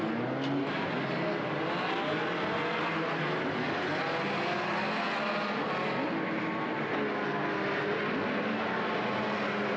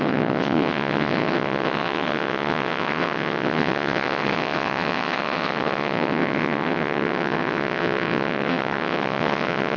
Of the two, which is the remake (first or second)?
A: second